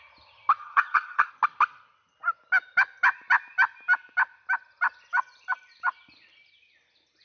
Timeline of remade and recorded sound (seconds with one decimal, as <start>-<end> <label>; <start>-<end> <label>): 0.0-0.6 recorded; 0.6-1.3 remade; 1.3-7.2 recorded